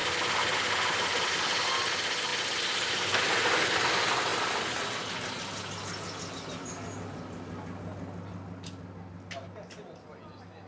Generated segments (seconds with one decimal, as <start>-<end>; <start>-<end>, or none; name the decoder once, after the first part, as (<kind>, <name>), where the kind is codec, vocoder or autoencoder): none

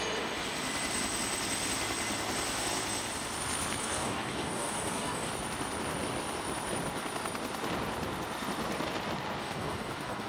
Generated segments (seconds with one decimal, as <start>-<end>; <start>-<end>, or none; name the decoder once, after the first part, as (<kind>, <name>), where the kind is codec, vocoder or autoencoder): 3.8-5.3 (codec, DAC); 9.4-10.3

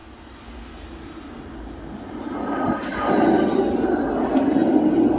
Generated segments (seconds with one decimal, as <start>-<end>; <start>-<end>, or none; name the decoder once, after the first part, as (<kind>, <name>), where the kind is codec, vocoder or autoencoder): none

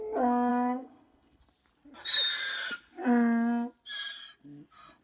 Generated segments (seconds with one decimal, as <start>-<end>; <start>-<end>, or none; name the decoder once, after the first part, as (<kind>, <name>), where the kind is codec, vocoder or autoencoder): 0.5-1.5 (codec, SNAC)

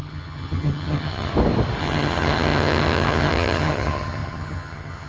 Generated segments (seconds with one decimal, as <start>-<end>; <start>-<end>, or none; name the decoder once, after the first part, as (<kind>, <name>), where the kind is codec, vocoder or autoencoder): 0.0-1.3 (vocoder, HiFi-GAN); 1.8-5.1